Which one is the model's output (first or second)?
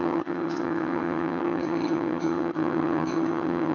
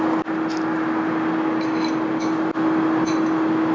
first